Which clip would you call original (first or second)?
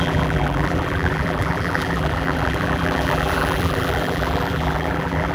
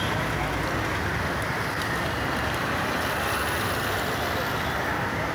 second